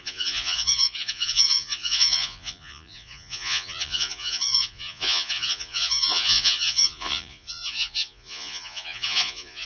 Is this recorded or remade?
remade